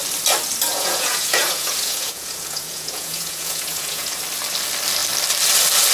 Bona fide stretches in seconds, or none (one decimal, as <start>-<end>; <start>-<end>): 0.0-0.7; 4.2-5.9